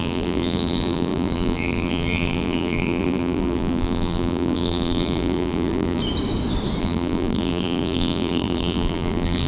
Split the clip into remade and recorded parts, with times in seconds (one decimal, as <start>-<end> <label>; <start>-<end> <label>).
0.0-6.0 remade; 6.0-6.8 recorded; 6.8-9.5 remade